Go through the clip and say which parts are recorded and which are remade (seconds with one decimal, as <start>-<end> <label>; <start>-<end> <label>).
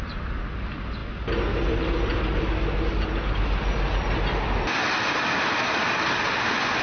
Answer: 0.0-6.8 recorded